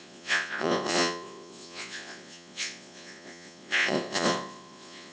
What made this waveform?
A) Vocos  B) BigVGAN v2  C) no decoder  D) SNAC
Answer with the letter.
A